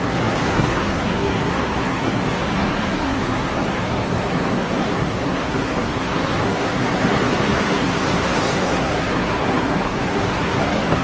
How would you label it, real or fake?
fake